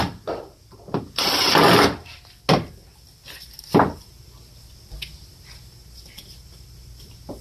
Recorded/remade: recorded